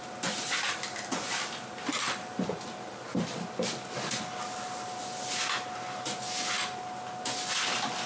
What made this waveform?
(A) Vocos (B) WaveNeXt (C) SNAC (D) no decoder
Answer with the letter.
D